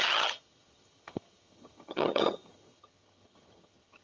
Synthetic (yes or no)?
yes